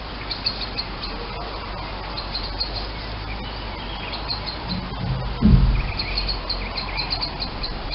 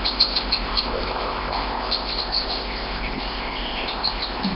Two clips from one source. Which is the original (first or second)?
first